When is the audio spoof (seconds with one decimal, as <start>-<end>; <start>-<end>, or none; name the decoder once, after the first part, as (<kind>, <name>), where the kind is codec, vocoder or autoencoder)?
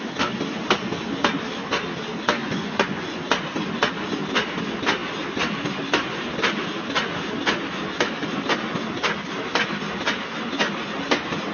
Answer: 2.4-3.2 (vocoder, Vocos)